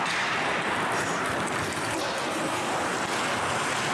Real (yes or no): yes